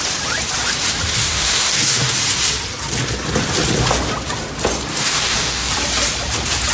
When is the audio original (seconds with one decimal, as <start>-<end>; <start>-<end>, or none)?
0.0-1.2; 2.2-4.9; 5.7-6.7